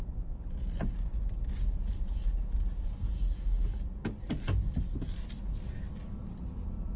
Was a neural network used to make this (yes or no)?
no